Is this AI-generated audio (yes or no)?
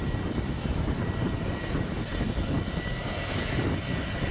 no